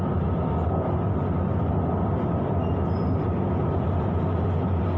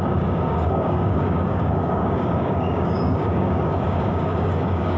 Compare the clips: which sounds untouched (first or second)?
first